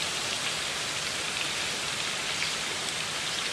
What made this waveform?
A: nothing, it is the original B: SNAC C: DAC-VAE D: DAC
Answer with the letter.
A